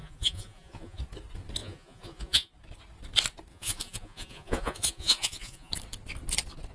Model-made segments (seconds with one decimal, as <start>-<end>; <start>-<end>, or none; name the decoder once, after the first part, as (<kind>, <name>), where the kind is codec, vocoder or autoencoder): 0.0-1.0 (vocoder, Vocos); 1.6-2.5; 3.5-5.7